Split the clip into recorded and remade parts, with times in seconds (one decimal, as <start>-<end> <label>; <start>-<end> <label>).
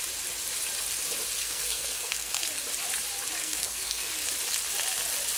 0.0-1.4 recorded; 1.4-2.4 remade; 2.4-3.4 recorded; 3.4-4.1 remade; 4.1-5.4 recorded